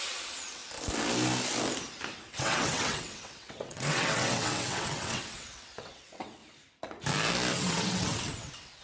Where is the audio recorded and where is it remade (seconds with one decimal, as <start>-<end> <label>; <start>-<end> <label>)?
0.0-0.6 remade; 0.6-2.1 recorded; 2.1-6.4 remade; 6.4-7.5 recorded; 7.5-8.8 remade